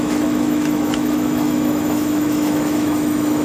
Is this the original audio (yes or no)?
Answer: no